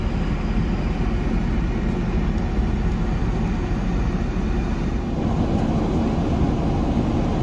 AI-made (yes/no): no